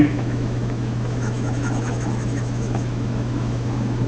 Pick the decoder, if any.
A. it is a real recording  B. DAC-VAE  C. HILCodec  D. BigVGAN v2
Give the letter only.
B